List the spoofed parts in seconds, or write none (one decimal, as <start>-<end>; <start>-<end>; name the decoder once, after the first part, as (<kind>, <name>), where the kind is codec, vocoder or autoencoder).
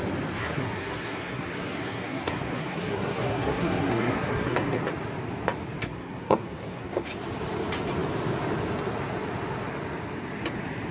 0.4-4.8 (codec, SNAC); 5.8-7.1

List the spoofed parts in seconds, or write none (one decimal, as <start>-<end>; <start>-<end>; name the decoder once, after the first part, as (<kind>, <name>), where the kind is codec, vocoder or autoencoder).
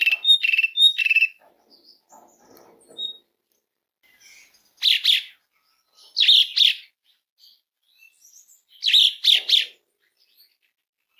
1.0-1.5 (autoencoder, DAC-VAE)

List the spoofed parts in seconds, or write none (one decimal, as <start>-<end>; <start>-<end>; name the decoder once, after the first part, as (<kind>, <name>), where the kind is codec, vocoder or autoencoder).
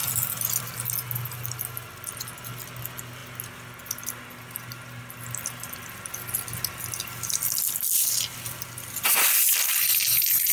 none